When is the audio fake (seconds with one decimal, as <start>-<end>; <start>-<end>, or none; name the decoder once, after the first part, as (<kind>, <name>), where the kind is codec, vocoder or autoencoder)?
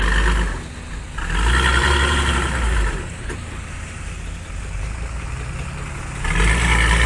1.7-6.0 (vocoder, BigVGAN v2)